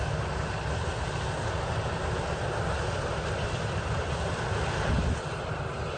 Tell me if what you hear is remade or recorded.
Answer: recorded